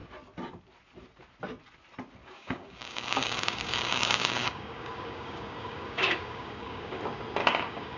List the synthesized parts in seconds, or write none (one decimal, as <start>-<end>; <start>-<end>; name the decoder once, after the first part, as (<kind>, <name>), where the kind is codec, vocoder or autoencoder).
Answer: 2.2-7.0 (codec, DAC); 7.4-8.0